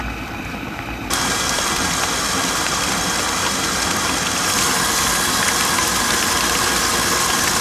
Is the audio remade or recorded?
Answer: recorded